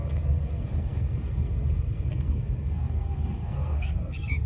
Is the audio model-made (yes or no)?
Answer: yes